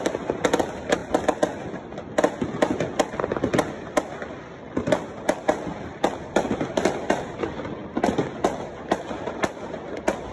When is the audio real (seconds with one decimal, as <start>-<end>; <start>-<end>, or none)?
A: 0.0-10.3